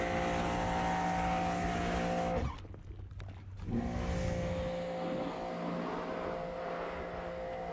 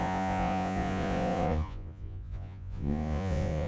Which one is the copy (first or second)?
second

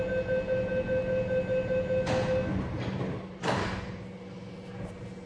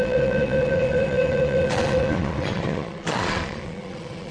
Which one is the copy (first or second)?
second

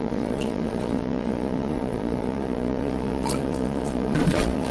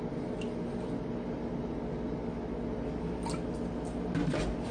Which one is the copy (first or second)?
first